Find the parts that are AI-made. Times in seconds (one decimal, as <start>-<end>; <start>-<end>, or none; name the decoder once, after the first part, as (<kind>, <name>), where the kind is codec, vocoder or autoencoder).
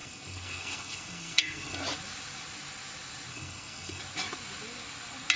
0.0-1.8 (codec, SNAC); 3.3-4.0